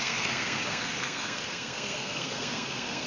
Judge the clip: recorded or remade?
remade